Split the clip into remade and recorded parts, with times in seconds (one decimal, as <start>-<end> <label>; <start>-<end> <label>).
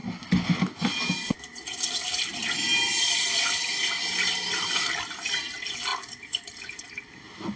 0.0-0.8 recorded; 0.8-2.3 remade; 2.3-3.0 recorded; 3.0-7.6 remade